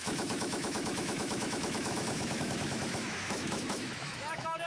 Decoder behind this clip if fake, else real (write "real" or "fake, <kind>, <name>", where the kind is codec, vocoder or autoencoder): fake, autoencoder, DAC-VAE